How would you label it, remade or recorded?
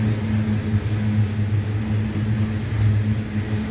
recorded